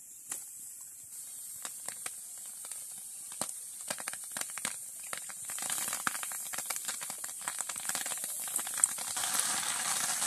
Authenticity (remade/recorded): remade